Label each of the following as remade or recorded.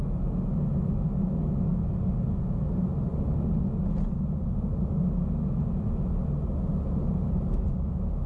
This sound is recorded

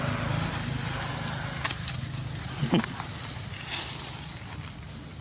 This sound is recorded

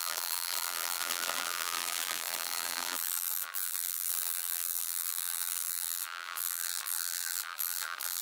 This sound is remade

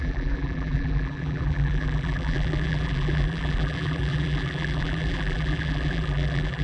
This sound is remade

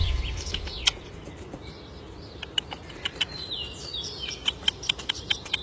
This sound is remade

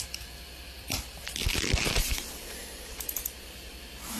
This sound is remade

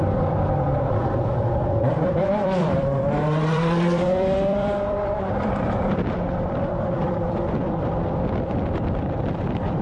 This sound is remade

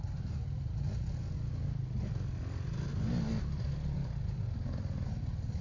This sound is recorded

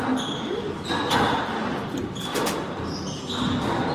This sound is recorded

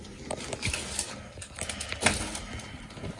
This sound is recorded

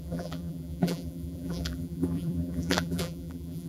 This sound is remade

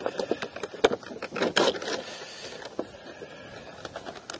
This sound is recorded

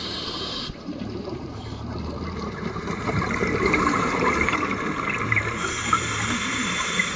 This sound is remade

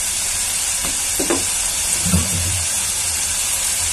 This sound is remade